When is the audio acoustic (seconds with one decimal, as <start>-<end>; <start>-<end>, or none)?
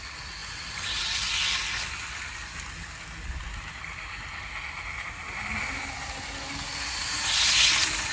0.0-8.1